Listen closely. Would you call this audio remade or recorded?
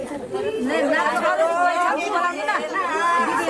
recorded